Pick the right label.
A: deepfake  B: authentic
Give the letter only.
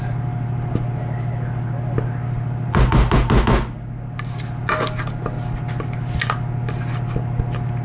B